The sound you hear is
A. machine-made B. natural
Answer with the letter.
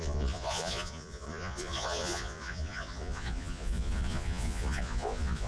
A